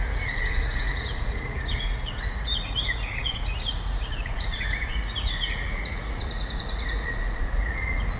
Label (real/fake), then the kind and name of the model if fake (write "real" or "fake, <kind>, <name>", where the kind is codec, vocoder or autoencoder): fake, vocoder, Vocos